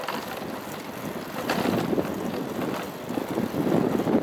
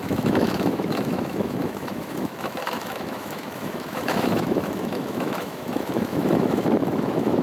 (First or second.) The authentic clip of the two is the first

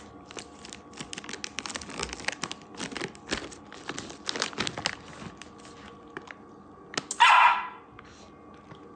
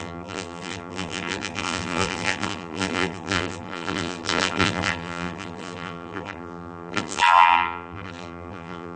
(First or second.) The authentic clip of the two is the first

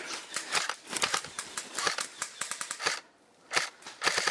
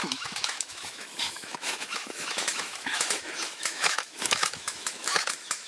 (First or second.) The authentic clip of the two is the first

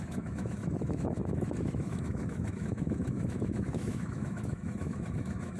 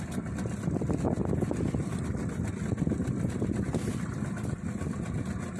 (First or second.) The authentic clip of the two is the second